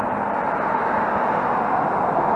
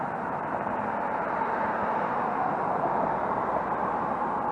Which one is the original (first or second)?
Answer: first